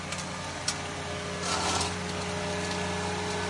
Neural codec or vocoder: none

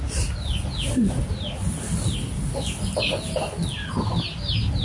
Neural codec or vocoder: none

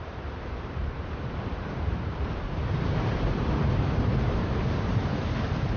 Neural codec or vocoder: vocoder, BigVGAN v2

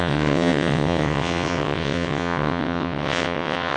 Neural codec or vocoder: vocoder, WaveNeXt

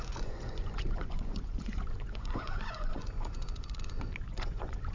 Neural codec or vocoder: vocoder, Vocos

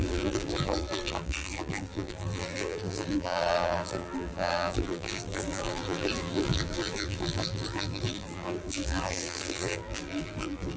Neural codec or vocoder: vocoder, BigVGAN v2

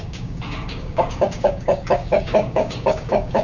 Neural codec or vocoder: codec, DAC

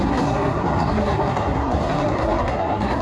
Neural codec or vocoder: codec, SNAC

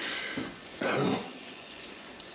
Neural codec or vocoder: vocoder, Vocos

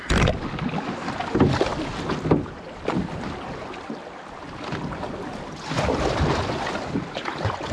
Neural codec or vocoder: none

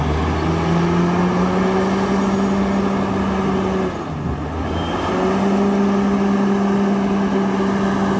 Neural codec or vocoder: none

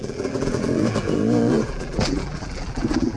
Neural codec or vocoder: vocoder, BigVGAN v2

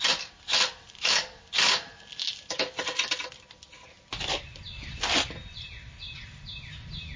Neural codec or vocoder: none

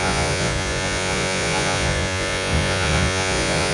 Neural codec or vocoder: vocoder, Vocos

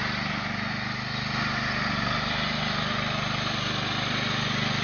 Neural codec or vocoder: none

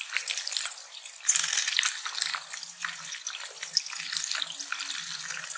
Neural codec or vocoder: none